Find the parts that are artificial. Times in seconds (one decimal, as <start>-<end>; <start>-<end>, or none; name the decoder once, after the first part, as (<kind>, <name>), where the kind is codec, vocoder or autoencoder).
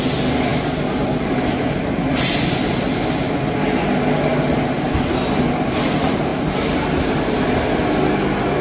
4.3-4.9 (vocoder, BigVGAN v2)